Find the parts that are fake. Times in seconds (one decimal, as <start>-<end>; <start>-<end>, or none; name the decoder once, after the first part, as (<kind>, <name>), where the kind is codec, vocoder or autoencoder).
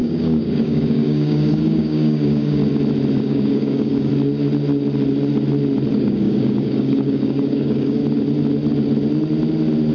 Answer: 0.0-2.6 (codec, DAC); 3.2-4.1; 5.9-8.0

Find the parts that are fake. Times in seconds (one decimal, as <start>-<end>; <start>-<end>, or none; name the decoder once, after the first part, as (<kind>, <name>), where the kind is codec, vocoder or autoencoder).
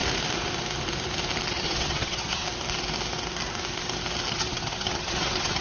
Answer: 1.5-2.4 (vocoder, HiFi-GAN); 4.3-5.6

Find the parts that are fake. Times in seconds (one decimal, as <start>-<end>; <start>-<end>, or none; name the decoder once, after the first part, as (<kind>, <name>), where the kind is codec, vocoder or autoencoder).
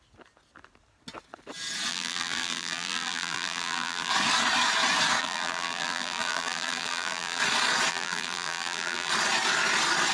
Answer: 1.9-4.1 (vocoder, BigVGAN v2); 5.2-7.4; 7.9-9.1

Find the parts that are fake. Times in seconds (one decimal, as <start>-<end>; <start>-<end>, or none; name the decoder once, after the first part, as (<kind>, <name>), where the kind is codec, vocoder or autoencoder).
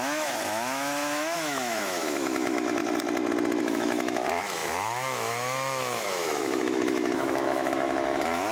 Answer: 0.0-2.8 (autoencoder, DAC-VAE); 3.6-8.5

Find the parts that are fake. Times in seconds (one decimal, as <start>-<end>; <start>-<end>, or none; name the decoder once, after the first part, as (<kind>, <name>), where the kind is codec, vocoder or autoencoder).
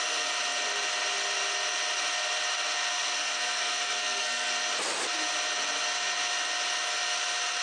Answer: 2.9-4.5 (codec, SNAC)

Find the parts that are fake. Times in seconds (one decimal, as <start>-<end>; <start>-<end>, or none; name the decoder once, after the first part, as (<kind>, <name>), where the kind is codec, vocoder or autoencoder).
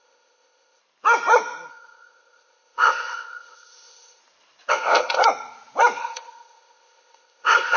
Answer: 0.0-0.8 (codec, ZipCodec); 1.7-4.2; 4.7-5.2; 6.0-7.8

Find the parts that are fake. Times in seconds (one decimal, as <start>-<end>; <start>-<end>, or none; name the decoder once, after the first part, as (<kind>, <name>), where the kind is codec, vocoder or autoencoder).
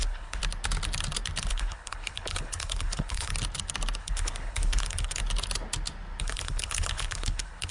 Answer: 0.0-0.4 (codec, HILCodec); 1.5-3.3; 4.0-5.2; 6.2-7.7